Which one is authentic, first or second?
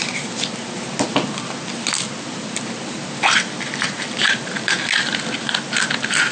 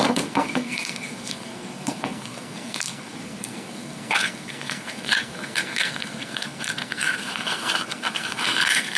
first